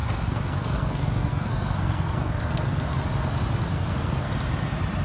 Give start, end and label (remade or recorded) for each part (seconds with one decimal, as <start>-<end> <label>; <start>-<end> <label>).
0.0-2.9 remade; 2.9-3.7 recorded; 3.7-4.3 remade; 4.3-5.0 recorded